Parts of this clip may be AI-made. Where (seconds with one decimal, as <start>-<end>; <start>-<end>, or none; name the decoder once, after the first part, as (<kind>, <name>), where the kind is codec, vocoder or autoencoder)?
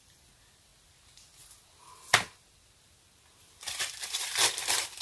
0.0-0.7 (vocoder, BigVGAN v2); 3.3-5.0